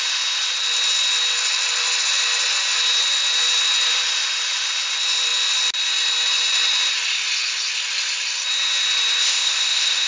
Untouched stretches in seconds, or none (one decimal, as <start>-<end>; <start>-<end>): 0.0-9.2